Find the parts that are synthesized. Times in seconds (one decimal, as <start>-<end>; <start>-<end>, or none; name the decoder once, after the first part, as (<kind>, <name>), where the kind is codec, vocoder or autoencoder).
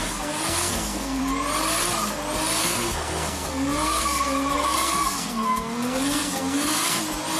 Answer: 0.0-1.2 (codec, SNAC); 2.6-7.0